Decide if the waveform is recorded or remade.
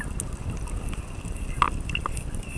recorded